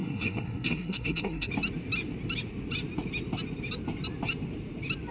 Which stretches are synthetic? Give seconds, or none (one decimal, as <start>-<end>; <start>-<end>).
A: 0.0-1.5